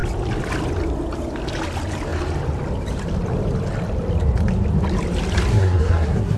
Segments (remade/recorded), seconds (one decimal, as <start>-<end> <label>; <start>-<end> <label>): 0.0-5.5 recorded; 5.5-6.4 remade